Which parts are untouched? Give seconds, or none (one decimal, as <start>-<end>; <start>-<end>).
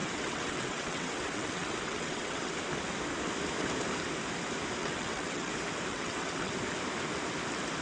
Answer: 2.5-4.8; 5.5-5.9; 6.5-7.8